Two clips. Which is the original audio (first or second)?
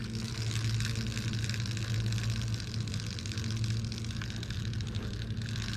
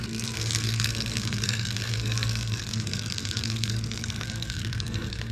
first